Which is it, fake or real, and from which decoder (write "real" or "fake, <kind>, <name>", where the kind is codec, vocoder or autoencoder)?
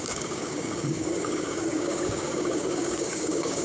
fake, codec, DAC